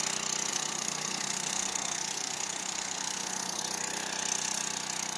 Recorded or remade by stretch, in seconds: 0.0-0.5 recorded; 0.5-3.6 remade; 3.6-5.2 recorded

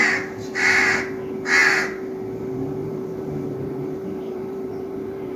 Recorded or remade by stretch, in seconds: 0.0-2.8 recorded; 2.8-5.4 remade

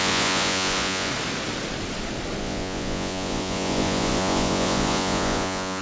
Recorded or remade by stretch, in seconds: 0.0-1.1 remade; 1.1-2.4 recorded; 2.4-5.8 remade

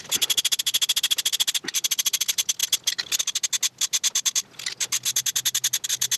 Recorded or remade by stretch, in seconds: 0.0-6.2 recorded